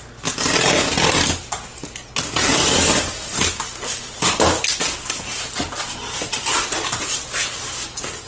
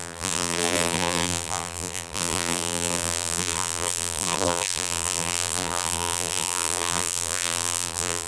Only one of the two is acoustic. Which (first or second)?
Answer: first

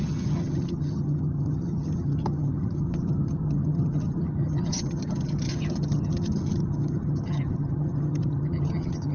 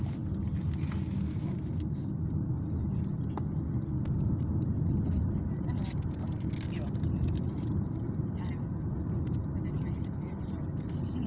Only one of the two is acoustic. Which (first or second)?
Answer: second